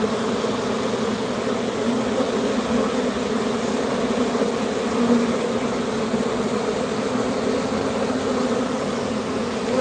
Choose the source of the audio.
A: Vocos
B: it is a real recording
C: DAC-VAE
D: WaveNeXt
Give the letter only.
B